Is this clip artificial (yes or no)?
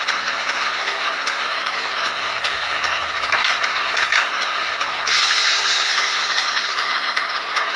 yes